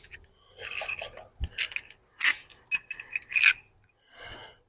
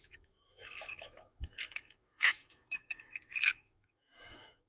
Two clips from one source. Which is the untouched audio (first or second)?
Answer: first